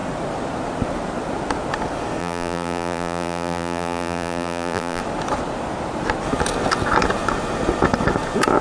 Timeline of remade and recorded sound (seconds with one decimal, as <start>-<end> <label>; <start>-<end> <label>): 0.0-2.2 recorded; 2.2-5.0 remade; 5.0-8.6 recorded